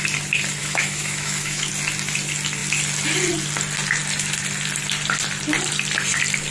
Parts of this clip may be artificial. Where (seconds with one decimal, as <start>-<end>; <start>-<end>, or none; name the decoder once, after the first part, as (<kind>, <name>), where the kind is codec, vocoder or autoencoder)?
0.6-1.7 (autoencoder, DAC-VAE)